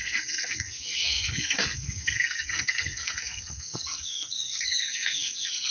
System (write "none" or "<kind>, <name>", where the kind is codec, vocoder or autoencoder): codec, SNAC